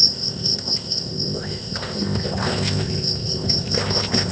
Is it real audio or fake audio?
fake